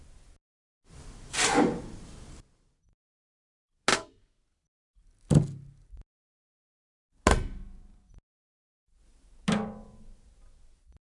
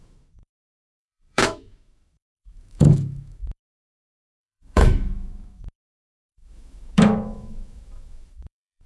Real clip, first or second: first